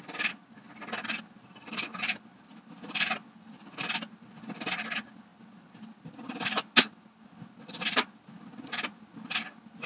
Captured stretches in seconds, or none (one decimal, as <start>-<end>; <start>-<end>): 0.0-9.9

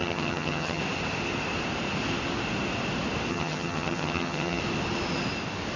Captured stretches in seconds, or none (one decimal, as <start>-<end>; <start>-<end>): 0.8-3.3; 4.6-5.8

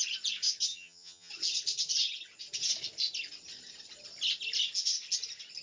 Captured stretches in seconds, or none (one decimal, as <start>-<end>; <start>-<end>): 0.0-0.7; 1.3-5.6

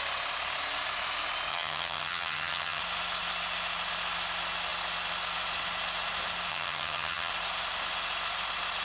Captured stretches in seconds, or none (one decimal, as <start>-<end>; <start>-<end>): 0.0-1.5; 2.8-6.5; 7.3-8.8

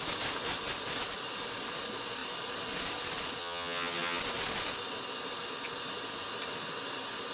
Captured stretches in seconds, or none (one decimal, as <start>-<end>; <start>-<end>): 0.0-3.4; 4.2-7.3

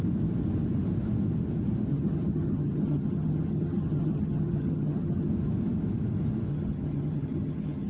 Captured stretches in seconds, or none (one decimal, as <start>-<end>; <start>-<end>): 0.0-1.9; 5.3-6.5

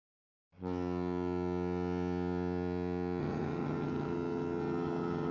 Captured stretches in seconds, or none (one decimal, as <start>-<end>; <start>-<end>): 0.0-3.2

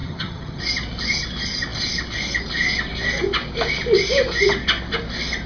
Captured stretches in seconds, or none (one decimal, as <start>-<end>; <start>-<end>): 0.6-5.5